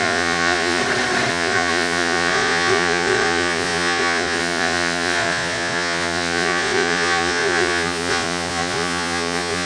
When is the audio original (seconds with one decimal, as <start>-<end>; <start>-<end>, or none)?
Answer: 0.8-1.3